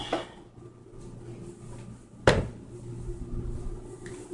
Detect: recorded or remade recorded